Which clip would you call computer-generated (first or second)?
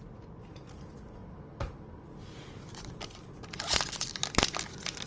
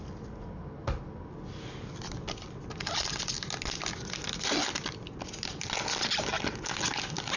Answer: first